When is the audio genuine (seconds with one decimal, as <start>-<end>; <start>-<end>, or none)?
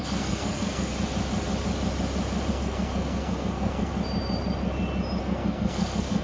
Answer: 0.9-2.5; 3.9-5.2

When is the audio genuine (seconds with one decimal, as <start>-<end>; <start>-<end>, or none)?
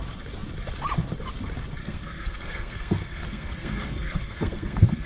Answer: 0.0-1.8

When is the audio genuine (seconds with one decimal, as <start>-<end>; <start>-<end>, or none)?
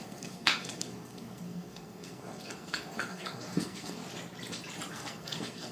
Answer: 4.0-4.9